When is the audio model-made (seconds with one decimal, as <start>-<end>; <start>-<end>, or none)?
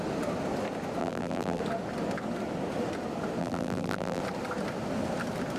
1.0-1.6; 3.4-4.2